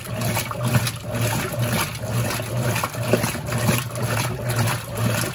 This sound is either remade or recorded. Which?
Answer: recorded